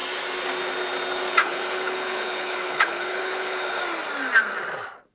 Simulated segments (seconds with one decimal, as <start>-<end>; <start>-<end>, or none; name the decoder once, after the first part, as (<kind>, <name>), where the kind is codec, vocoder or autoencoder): 1.4-3.8 (codec, HILCodec)